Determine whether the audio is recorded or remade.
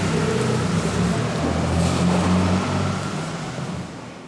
recorded